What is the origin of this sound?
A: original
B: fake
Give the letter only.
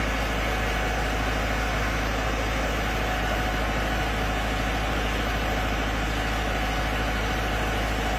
A